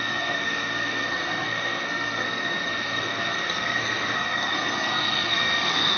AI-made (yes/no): yes